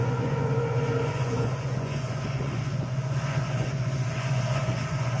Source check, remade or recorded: remade